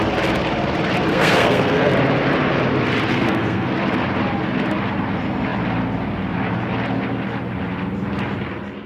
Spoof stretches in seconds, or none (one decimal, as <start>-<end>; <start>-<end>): 1.1-1.9; 3.1-3.7